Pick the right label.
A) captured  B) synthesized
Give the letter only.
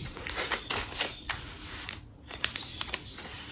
B